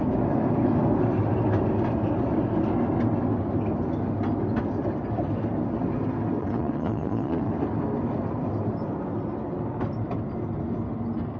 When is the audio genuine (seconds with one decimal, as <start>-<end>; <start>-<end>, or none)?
0.0-6.4; 7.5-11.4